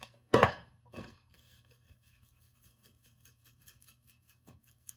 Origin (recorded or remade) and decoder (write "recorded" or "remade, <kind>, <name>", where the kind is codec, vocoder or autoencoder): remade, codec, SNAC